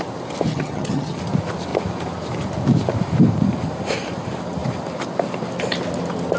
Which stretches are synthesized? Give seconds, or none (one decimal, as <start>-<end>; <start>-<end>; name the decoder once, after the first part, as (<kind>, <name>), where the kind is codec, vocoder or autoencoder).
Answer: 0.5-1.2 (vocoder, HiFi-GAN)